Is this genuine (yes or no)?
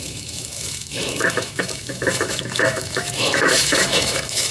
no